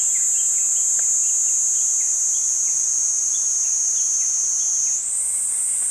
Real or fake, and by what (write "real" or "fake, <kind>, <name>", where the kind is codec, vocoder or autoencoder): real